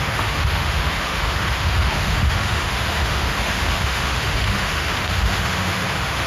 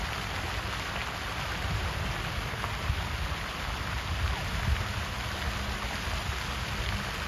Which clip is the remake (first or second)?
first